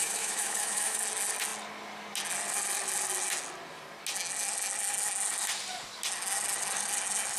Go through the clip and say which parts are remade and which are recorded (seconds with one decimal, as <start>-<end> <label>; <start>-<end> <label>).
0.0-1.0 remade; 1.0-7.4 recorded